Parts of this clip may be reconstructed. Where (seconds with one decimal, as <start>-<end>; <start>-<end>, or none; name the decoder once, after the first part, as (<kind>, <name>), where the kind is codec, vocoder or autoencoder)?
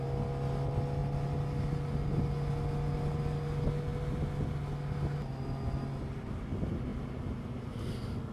none